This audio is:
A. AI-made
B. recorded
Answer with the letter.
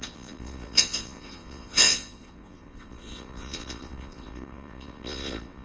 A